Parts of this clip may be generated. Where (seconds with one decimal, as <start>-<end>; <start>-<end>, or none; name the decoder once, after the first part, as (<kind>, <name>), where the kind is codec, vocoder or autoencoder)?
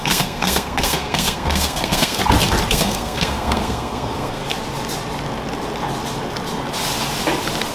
0.0-2.2 (codec, SNAC); 2.7-4.4